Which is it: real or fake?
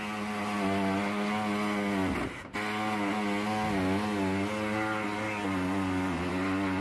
real